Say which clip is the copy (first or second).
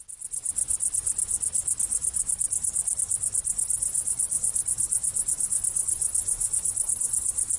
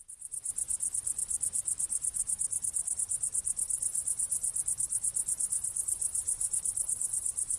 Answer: second